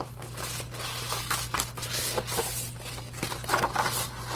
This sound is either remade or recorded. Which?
recorded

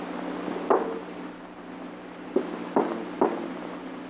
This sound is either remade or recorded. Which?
recorded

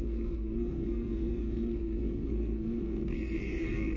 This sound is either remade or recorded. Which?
remade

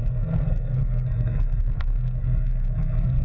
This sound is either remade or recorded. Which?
remade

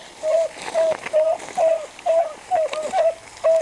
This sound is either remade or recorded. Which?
recorded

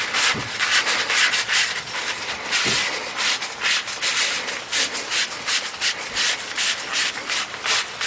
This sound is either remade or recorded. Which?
recorded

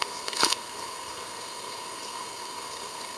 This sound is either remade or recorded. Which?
remade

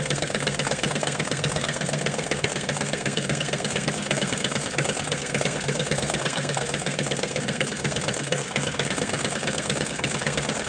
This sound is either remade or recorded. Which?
remade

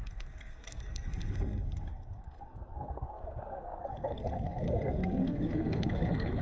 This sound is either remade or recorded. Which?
remade